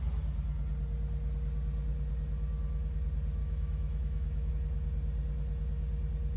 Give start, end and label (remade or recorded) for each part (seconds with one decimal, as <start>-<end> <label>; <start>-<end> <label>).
0.0-3.4 recorded; 3.4-4.5 remade; 4.5-6.4 recorded